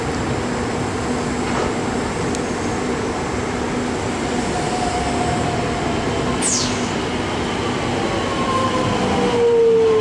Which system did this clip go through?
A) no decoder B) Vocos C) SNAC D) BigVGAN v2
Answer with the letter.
A